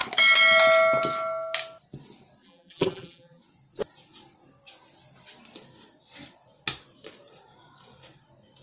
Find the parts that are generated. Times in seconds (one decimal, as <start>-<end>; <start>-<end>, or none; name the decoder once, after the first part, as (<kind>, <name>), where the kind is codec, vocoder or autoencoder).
2.4-3.4 (vocoder, BigVGAN v2)